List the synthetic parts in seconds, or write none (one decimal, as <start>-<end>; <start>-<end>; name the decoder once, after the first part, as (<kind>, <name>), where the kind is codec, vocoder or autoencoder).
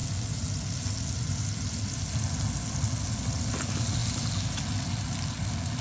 none